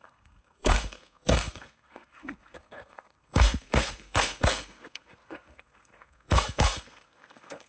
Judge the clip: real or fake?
fake